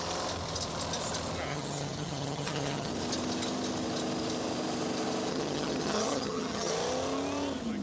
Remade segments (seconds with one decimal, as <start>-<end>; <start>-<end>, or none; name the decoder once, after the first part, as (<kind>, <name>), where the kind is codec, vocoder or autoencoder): 1.5-2.9 (vocoder, HiFi-GAN); 5.3-6.7